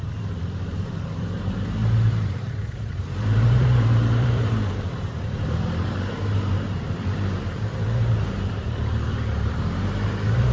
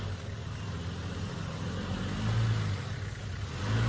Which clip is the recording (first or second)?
second